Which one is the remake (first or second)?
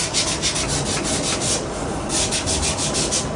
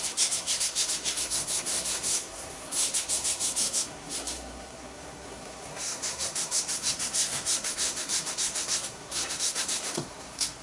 second